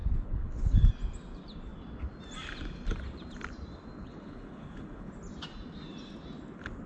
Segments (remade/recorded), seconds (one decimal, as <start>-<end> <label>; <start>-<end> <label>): 0.0-0.9 remade; 0.9-4.0 recorded; 4.0-5.1 remade; 5.1-6.9 recorded

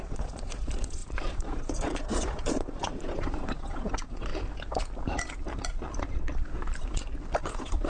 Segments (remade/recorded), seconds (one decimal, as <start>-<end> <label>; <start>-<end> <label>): 0.0-4.3 remade; 4.3-7.4 recorded; 7.4-7.9 remade